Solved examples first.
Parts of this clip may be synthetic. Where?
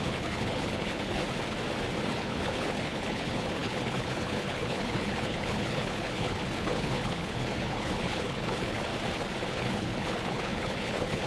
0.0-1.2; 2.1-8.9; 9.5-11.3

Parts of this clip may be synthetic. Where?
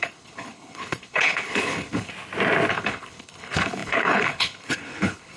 0.0-2.1; 2.7-5.4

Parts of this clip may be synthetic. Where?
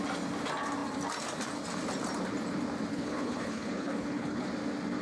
2.9-4.5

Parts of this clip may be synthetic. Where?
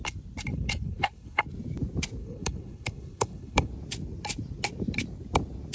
0.5-1.4; 2.2-3.7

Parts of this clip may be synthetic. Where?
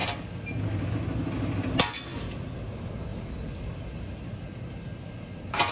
none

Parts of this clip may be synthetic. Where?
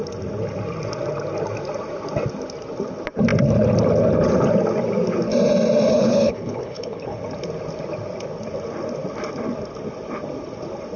5.9-7.2